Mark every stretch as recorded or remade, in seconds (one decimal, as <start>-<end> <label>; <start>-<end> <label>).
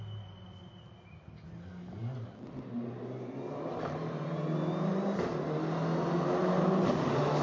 0.0-7.4 recorded